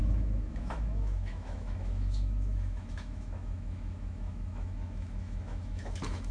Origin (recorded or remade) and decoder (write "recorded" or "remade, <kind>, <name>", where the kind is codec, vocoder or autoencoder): remade, autoencoder, DAC-VAE